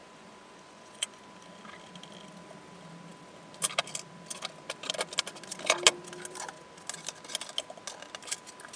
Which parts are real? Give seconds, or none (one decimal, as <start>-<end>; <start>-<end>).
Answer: 1.2-8.8